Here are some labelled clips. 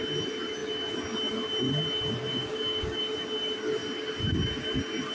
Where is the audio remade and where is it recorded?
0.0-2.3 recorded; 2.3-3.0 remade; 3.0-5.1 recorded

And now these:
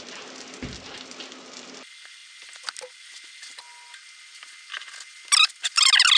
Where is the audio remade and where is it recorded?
0.0-6.2 recorded